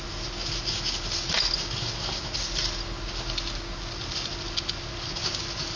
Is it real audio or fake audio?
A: real